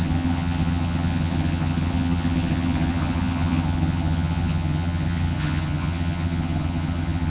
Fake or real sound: fake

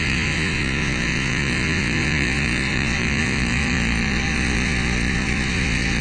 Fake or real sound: fake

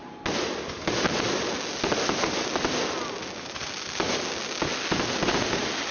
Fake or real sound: real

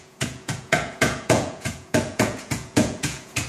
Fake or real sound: fake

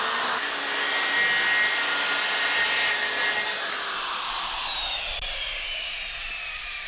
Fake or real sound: real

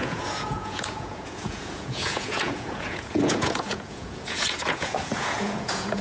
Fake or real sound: fake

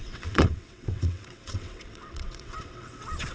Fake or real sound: fake